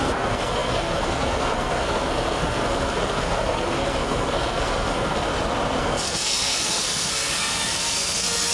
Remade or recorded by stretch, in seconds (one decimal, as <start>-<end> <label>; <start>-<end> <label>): 0.0-5.3 remade; 5.3-5.8 recorded; 5.8-8.5 remade